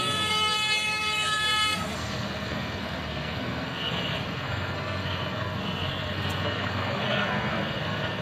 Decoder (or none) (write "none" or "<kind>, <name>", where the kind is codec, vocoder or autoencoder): codec, SNAC